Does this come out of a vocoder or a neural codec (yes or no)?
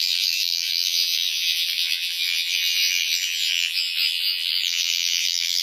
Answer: yes